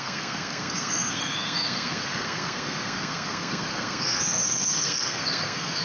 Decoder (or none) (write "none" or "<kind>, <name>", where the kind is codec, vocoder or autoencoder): codec, SNAC